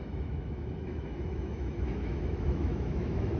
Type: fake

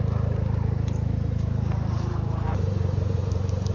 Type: fake